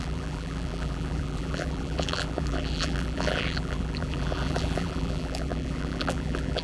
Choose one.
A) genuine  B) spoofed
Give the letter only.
B